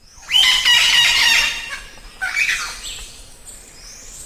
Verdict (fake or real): real